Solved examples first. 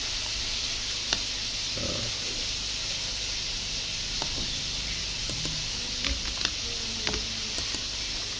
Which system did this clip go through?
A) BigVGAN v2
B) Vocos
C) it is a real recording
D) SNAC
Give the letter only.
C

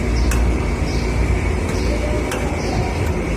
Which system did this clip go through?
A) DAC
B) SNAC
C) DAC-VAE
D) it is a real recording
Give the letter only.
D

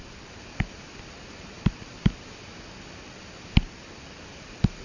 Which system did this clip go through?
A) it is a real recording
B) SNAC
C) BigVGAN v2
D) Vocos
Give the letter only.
A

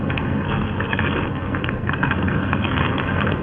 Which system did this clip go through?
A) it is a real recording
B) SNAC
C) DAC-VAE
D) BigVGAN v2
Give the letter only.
B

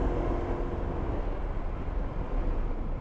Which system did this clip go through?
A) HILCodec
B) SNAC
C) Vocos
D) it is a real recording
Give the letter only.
D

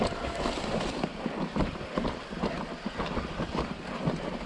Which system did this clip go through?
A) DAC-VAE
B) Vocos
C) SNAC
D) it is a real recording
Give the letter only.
D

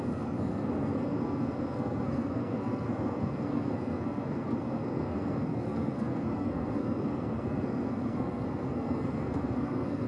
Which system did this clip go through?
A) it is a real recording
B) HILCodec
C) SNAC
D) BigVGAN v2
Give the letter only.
C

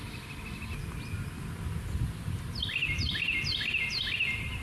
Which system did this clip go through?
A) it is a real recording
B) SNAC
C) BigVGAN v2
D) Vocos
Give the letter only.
A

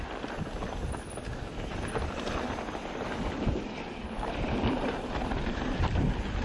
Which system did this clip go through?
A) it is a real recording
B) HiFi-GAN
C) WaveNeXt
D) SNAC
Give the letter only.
A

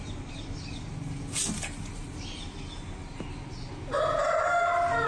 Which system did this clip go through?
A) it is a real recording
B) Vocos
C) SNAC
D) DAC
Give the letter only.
A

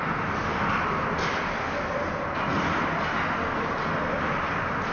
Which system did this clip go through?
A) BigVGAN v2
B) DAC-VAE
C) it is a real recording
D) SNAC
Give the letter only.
C